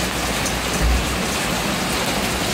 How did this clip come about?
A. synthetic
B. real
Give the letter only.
B